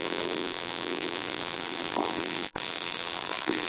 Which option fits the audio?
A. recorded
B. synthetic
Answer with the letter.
B